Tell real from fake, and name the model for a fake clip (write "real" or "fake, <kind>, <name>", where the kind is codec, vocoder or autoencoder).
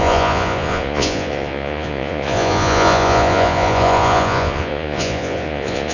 fake, vocoder, Vocos